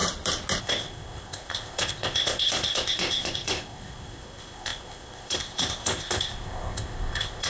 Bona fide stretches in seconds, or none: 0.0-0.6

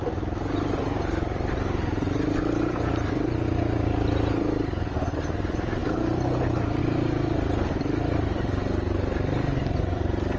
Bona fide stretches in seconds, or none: 0.0-10.4

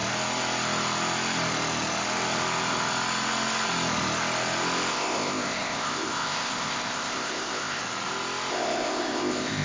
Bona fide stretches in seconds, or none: 0.0-4.9; 7.8-8.5

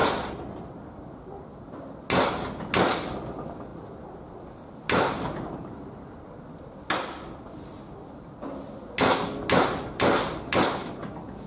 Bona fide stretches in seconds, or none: 0.0-11.5

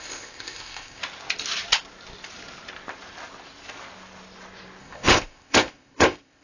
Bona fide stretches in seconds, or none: 1.0-4.8